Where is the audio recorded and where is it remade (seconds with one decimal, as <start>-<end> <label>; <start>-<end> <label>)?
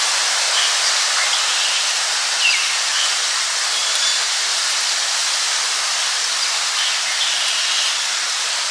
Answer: 0.0-3.8 recorded; 3.8-4.8 remade; 4.8-5.2 recorded; 5.2-6.6 remade; 6.6-8.7 recorded